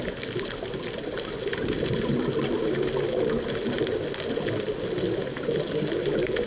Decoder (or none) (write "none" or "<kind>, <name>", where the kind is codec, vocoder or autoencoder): none